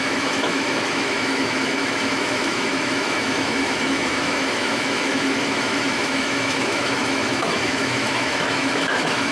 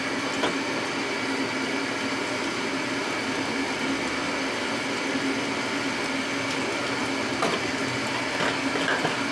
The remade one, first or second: first